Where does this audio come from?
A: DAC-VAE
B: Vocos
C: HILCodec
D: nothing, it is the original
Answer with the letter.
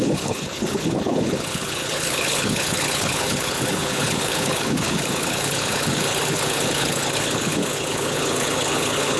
C